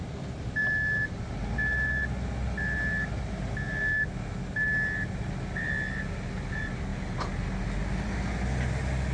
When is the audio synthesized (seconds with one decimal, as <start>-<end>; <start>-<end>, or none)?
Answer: none